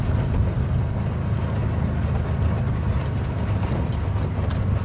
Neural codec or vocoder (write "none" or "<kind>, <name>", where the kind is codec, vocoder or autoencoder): none